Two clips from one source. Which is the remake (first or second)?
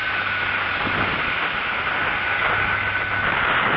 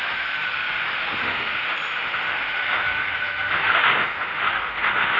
second